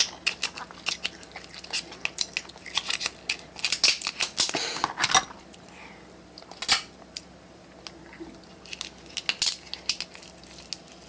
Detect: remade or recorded recorded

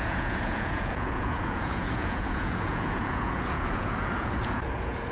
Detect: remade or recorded remade